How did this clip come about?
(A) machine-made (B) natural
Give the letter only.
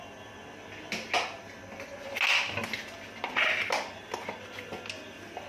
B